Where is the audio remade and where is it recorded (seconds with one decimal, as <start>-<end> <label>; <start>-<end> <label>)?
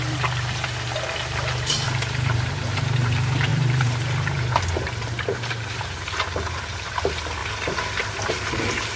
0.0-7.4 remade; 7.4-8.3 recorded; 8.3-9.0 remade